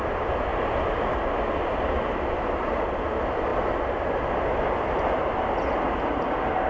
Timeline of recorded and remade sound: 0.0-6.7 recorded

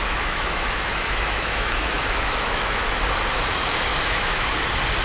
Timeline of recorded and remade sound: 0.0-3.0 remade; 3.0-3.9 recorded; 3.9-4.5 remade; 4.5-5.0 recorded

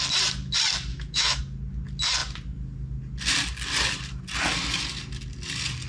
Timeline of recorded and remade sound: 0.0-0.9 recorded; 0.9-1.4 remade; 1.4-5.9 recorded

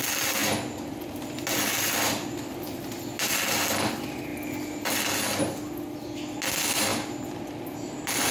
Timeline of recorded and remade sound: 0.0-8.3 recorded

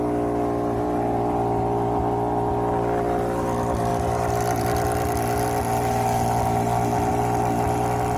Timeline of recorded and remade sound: 0.0-8.2 recorded